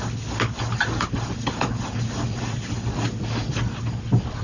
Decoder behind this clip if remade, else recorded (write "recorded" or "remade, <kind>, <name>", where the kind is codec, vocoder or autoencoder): recorded